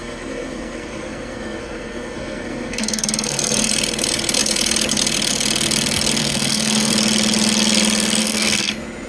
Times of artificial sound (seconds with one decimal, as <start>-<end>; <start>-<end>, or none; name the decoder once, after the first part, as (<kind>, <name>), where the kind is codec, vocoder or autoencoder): 0.0-3.7 (codec, SNAC); 6.2-6.9; 8.2-8.7